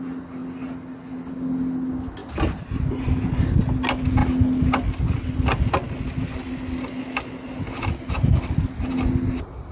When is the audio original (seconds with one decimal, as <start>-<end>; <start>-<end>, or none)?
0.0-9.7

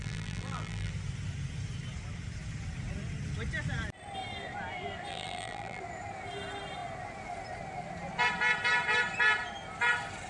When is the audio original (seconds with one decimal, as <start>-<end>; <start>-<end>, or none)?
0.9-5.1; 5.8-10.3

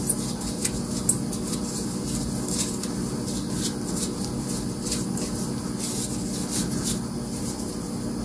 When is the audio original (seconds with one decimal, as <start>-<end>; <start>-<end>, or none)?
0.0-8.2

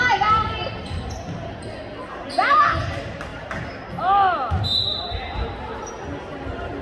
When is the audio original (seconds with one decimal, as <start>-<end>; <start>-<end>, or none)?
0.0-6.8

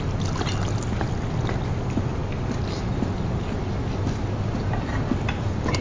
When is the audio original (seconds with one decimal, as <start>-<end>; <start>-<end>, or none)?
0.0-5.8